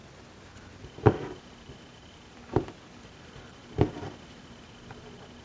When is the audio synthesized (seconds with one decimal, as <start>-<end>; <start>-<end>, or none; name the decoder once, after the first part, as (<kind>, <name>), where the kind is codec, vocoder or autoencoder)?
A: none

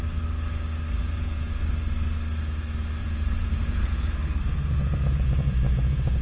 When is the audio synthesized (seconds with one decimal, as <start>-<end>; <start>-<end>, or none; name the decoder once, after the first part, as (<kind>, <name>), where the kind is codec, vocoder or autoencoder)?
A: 1.0-1.6 (vocoder, Vocos); 3.0-6.2

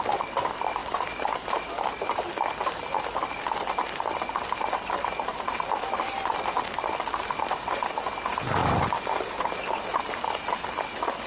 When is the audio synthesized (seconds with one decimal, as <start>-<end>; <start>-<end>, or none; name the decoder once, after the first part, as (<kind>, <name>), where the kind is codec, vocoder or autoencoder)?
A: none

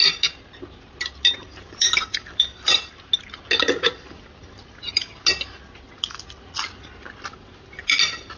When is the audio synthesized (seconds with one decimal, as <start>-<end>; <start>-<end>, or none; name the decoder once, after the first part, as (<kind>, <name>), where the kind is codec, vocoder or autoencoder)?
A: 1.4-3.1 (vocoder, BigVGAN v2)